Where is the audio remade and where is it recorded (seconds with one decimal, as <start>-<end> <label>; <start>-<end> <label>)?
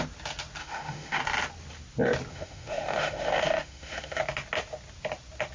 0.0-0.6 recorded; 0.6-1.2 remade; 1.2-2.3 recorded; 2.3-4.2 remade; 4.2-5.5 recorded